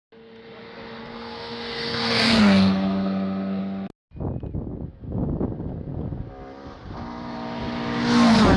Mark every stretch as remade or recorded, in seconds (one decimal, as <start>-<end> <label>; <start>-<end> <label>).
0.0-1.0 recorded; 1.0-3.6 remade; 3.6-8.6 recorded